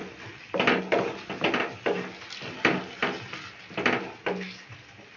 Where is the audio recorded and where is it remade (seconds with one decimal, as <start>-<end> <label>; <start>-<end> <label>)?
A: 0.0-5.2 recorded